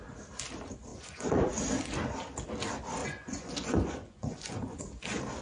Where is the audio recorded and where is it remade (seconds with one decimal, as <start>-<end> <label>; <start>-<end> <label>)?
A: 0.0-0.9 recorded; 0.9-1.4 remade; 1.4-3.0 recorded; 3.0-4.8 remade; 4.8-5.4 recorded